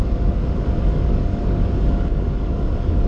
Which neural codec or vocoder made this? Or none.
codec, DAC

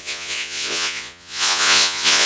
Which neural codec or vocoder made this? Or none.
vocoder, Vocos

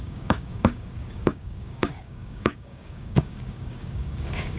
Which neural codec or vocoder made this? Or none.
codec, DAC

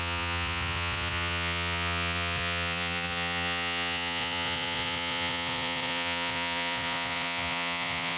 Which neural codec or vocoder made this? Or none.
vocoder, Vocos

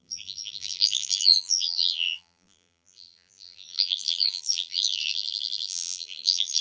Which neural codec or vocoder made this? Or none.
vocoder, BigVGAN v2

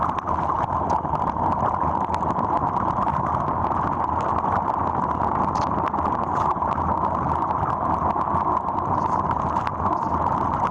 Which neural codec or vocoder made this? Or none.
none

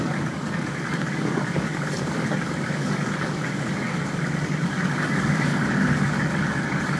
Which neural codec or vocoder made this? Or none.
codec, DAC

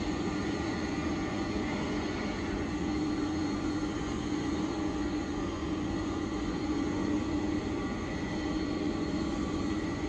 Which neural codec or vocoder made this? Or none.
vocoder, Vocos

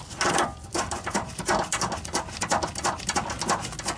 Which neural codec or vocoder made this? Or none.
none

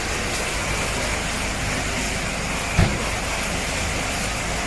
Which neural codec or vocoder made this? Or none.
none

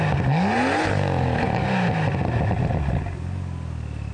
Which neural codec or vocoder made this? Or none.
none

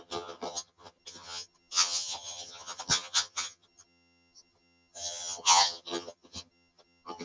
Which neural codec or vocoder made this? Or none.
vocoder, HiFi-GAN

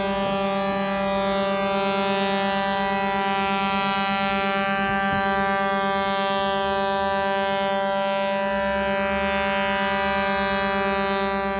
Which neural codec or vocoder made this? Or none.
none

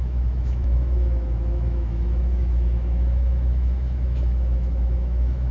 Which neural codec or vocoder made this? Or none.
autoencoder, DAC-VAE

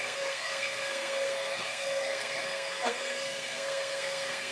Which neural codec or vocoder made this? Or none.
codec, SNAC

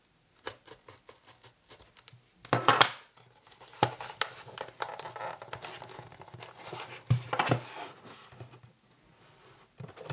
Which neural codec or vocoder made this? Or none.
none